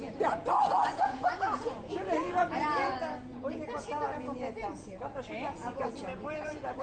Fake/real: fake